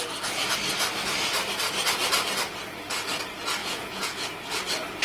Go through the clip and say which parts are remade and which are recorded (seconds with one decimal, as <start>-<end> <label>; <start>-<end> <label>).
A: 0.0-3.6 recorded; 3.6-4.3 remade; 4.3-5.0 recorded